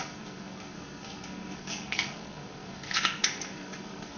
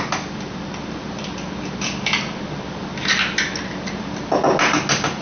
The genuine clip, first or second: second